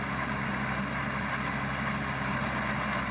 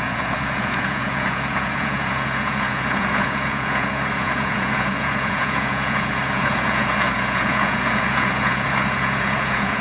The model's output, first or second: second